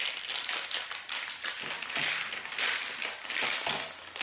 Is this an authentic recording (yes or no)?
yes